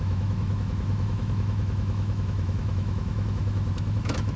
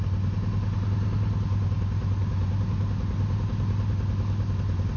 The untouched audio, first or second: second